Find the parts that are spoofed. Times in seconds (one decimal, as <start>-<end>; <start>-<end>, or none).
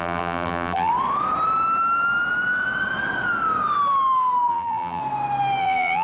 0.0-0.9; 4.5-5.0; 5.6-6.0